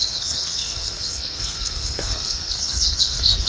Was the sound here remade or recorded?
remade